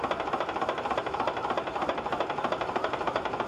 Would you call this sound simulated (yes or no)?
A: yes